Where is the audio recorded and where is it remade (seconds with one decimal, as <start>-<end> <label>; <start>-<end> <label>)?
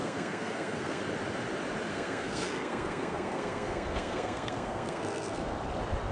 0.0-1.0 remade; 1.0-1.9 recorded; 1.9-5.6 remade; 5.6-6.1 recorded